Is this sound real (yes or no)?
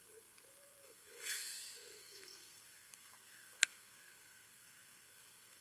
no